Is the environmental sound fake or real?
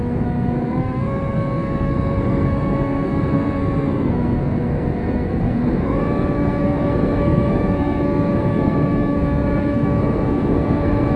fake